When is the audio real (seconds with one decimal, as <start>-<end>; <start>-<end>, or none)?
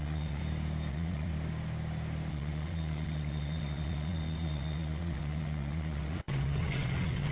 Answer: 0.4-0.9; 1.3-2.3